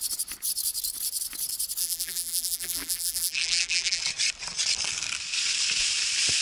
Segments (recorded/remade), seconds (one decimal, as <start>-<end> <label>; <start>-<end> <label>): 0.0-1.8 recorded; 1.8-4.0 remade; 4.0-6.4 recorded